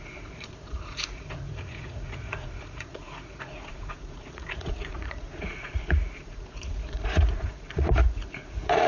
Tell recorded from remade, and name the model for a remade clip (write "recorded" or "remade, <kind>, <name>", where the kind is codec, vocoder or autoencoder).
remade, vocoder, Vocos